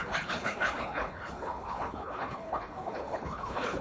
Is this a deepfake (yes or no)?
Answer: yes